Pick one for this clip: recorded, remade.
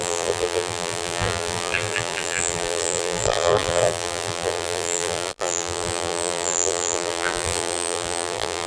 remade